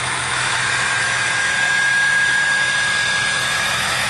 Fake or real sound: fake